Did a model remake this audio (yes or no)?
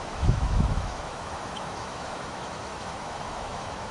yes